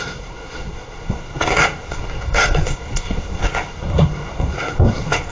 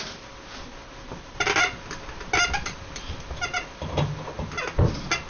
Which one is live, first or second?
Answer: second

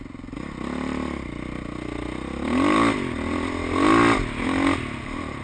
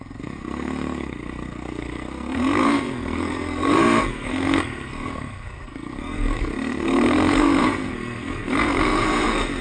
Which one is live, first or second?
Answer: first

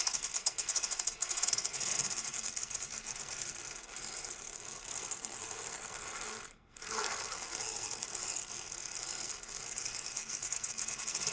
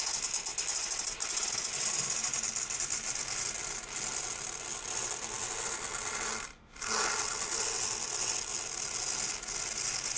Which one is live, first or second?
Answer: second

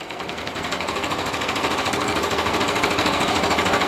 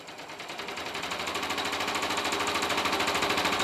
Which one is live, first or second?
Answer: second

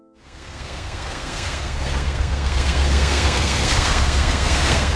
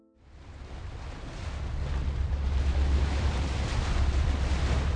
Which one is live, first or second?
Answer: second